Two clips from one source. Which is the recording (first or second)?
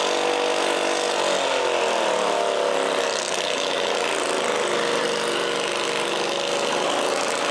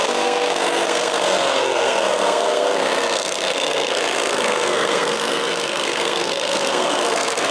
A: first